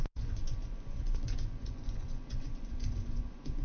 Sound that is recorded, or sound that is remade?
remade